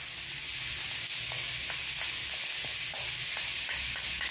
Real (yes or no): yes